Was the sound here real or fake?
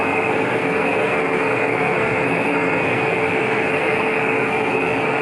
fake